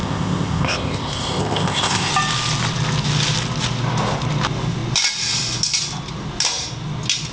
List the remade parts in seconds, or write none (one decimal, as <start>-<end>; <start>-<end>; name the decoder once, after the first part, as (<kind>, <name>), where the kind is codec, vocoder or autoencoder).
0.0-2.1 (codec, ZipCodec)